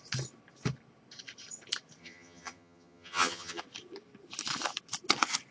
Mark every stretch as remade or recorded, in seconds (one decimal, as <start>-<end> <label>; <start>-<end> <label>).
0.0-2.0 recorded; 2.0-3.6 remade; 3.6-5.5 recorded